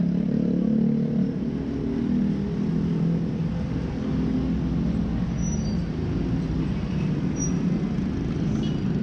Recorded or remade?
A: recorded